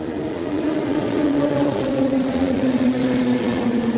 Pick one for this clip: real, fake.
fake